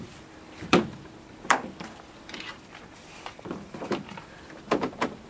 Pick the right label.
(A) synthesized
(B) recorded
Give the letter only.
A